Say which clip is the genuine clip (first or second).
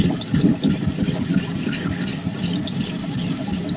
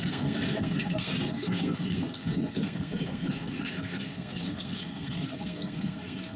first